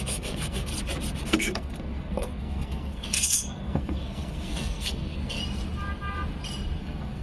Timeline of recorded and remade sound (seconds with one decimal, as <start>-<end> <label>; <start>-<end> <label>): 0.0-0.7 remade; 0.7-1.2 recorded; 1.2-5.4 remade; 5.4-6.8 recorded; 6.8-7.2 remade